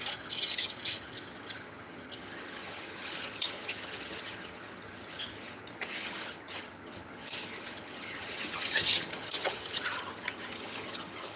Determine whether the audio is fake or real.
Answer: fake